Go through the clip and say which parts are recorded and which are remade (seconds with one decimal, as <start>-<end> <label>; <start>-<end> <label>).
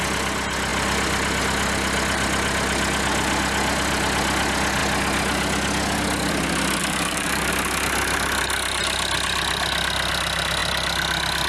0.0-6.8 recorded; 6.8-7.5 remade; 7.5-11.5 recorded